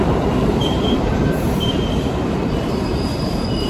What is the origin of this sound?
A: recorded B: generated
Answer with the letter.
B